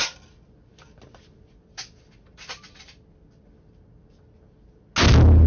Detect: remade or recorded recorded